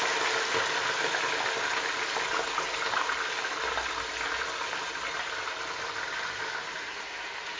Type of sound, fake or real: real